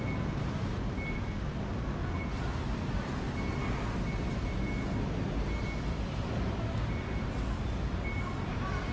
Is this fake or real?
real